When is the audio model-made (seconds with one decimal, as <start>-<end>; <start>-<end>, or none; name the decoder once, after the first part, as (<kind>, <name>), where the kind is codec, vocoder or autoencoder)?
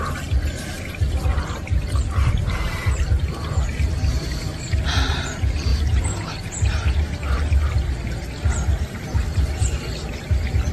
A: none